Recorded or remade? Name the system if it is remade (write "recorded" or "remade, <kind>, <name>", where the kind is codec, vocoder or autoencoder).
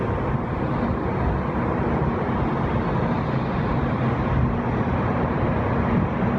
recorded